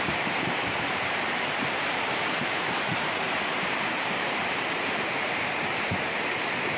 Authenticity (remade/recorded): remade